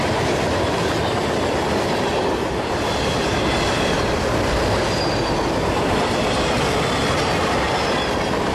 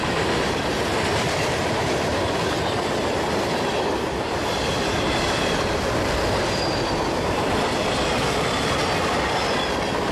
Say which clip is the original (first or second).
first